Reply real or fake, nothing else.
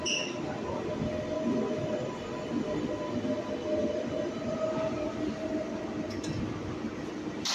real